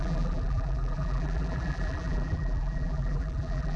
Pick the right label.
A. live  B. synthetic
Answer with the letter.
B